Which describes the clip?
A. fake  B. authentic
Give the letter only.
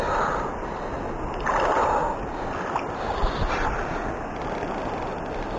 B